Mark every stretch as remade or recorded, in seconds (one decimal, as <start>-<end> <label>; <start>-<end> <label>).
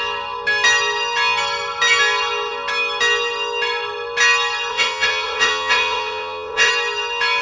0.0-4.7 recorded; 4.7-6.7 remade; 6.7-7.4 recorded